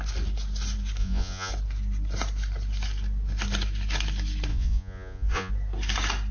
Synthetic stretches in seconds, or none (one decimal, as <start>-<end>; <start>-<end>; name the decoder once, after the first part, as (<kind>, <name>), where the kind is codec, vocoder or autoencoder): 1.0-1.5 (vocoder, Vocos); 4.5-5.5